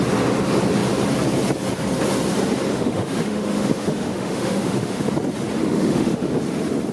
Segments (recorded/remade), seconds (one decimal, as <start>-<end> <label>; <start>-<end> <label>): 0.0-2.7 recorded; 2.7-5.1 remade; 5.1-5.6 recorded; 5.6-6.3 remade; 6.3-6.9 recorded